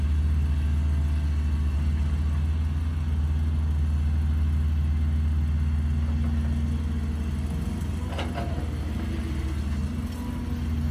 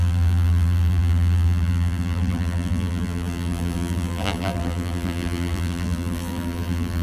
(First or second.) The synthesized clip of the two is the second